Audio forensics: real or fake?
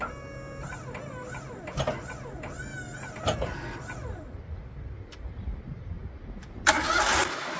real